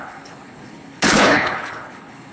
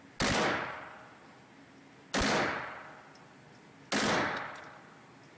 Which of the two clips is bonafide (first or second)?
second